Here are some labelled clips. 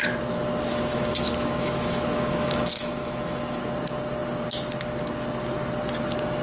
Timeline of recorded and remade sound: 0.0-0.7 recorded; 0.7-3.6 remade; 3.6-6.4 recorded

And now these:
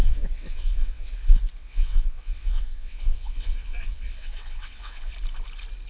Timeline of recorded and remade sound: 0.0-1.1 remade; 1.1-1.6 recorded; 1.6-5.1 remade; 5.1-5.9 recorded

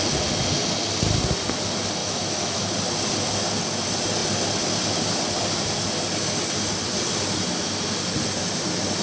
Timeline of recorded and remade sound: 0.0-2.0 recorded; 2.0-2.7 remade; 2.7-9.0 recorded

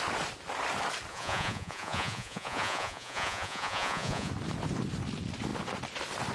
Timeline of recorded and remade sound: 0.0-1.1 recorded; 1.1-4.3 remade; 4.3-6.3 recorded